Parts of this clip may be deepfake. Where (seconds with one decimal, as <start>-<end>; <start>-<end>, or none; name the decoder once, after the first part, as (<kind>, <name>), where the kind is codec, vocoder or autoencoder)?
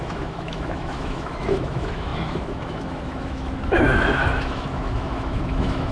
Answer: 0.0-5.9 (autoencoder, DAC-VAE)